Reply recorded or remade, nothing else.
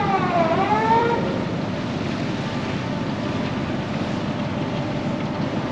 remade